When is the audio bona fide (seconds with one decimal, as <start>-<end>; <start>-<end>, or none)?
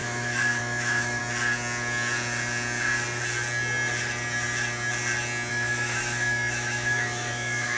1.2-5.5